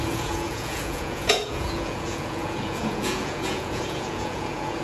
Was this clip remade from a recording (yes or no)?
yes